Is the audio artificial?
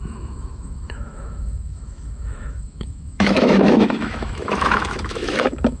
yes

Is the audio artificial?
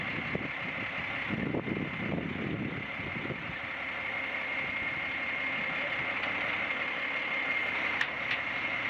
no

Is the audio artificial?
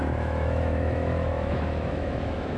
yes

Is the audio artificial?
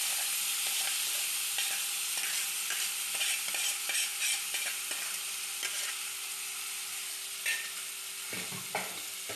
no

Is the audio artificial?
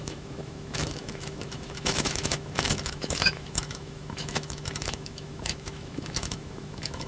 yes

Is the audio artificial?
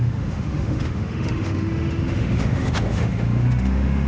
yes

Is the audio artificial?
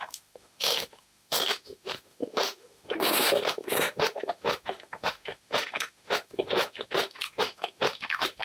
yes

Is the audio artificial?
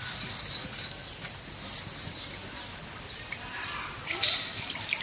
no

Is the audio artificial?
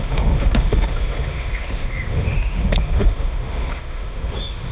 yes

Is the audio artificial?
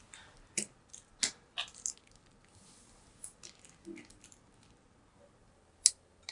no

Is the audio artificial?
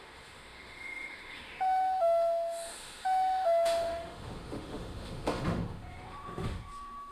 yes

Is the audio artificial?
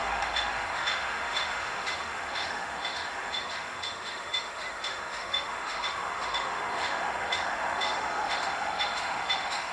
yes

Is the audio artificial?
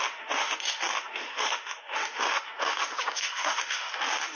yes